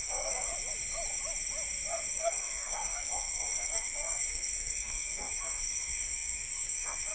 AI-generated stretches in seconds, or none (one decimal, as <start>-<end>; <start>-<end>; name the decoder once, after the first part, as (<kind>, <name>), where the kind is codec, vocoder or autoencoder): 0.0-0.5 (codec, SNAC); 2.1-7.1